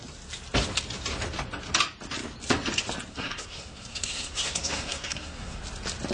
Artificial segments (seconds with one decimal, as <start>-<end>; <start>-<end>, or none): 3.1-5.6